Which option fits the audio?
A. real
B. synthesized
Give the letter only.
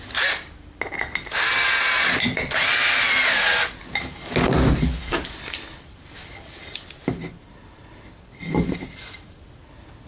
A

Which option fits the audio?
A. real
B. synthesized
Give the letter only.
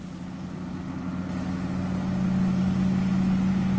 A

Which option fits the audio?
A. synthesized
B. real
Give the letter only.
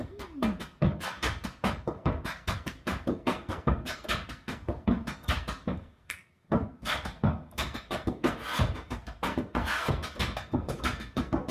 A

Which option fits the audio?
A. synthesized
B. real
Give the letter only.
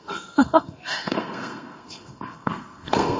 A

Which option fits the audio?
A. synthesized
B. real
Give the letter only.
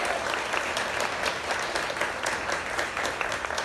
B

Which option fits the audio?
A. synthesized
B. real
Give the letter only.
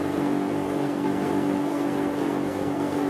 A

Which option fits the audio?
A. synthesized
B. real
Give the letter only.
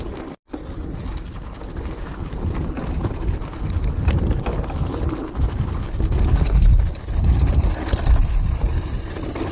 A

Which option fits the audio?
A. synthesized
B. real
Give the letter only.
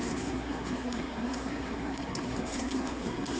A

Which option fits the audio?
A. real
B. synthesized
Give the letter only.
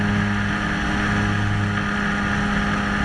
A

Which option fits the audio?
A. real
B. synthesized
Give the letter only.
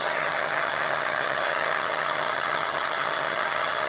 B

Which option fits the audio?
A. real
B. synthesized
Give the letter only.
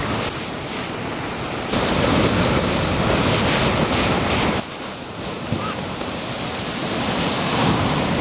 A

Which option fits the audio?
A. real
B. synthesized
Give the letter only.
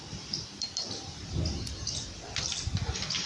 B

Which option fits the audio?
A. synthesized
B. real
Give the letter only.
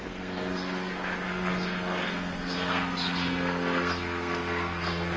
A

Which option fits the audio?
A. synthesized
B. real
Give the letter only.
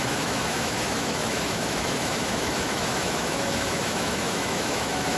A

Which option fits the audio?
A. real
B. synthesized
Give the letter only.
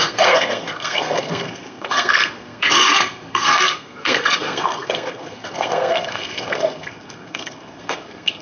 B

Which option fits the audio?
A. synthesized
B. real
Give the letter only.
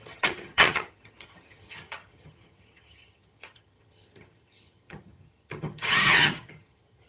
A